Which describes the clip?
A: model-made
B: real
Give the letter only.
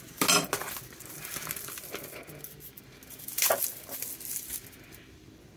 B